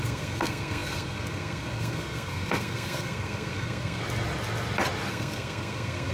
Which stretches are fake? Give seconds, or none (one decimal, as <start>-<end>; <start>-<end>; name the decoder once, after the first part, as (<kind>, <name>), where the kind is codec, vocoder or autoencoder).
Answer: 0.0-4.0 (codec, SNAC); 5.1-6.1